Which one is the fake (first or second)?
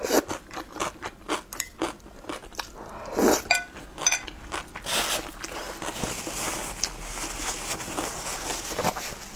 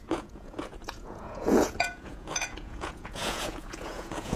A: second